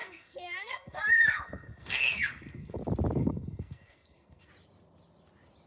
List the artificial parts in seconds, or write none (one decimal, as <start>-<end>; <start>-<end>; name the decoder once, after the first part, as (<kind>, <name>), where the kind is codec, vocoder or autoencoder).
0.0-2.8 (codec, SNAC); 3.2-4.5